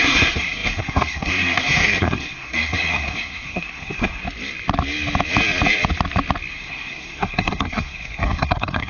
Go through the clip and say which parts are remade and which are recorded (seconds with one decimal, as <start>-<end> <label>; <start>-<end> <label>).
0.0-4.2 remade; 4.2-6.5 recorded; 6.5-8.9 remade